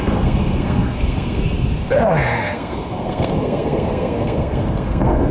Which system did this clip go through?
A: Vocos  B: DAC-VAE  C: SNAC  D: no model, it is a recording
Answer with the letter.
C